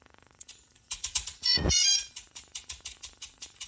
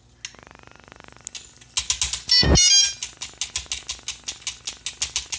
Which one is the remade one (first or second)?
first